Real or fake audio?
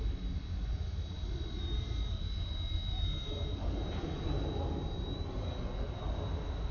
real